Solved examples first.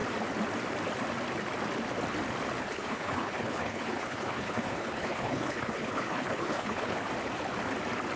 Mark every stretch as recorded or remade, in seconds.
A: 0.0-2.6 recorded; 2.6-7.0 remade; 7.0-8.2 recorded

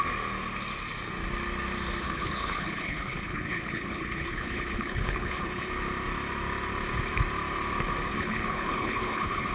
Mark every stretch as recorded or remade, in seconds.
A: 0.0-2.0 recorded; 2.0-5.7 remade; 5.7-8.1 recorded; 8.1-9.5 remade

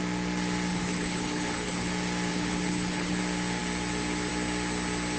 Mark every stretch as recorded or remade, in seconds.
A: 0.0-0.7 recorded; 0.7-1.9 remade; 1.9-2.3 recorded; 2.3-3.2 remade; 3.2-5.2 recorded

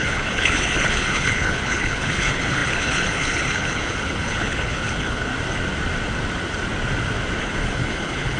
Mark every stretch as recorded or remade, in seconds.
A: 0.0-5.3 remade; 5.3-7.4 recorded; 7.4-8.4 remade